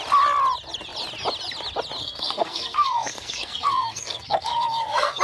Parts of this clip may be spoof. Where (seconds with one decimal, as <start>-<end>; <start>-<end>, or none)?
2.0-5.2